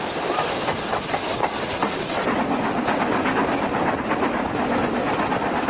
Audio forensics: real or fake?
real